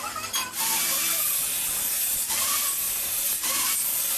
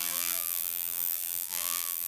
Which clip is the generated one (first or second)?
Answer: second